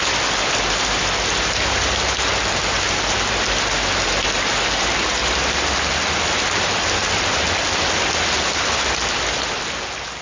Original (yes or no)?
yes